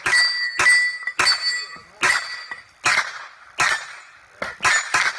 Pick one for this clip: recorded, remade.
recorded